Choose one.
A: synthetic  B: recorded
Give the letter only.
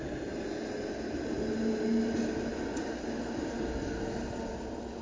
B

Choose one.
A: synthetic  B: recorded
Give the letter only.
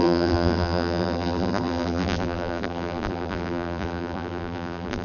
A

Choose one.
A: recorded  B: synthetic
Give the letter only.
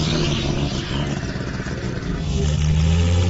A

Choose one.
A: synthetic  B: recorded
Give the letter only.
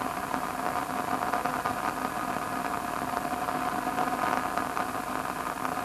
B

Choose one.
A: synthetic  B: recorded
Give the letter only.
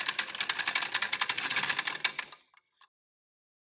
B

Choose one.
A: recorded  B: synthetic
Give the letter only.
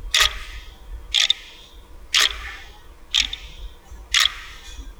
A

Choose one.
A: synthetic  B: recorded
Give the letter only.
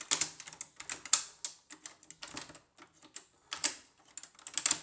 B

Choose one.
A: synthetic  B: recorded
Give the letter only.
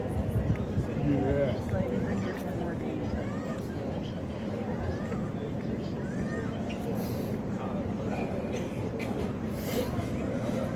B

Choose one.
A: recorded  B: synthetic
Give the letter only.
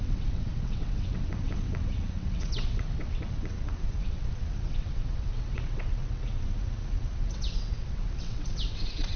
B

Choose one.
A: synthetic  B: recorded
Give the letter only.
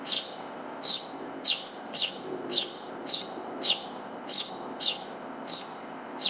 A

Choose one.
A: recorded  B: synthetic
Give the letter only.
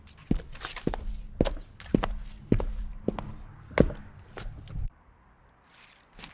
A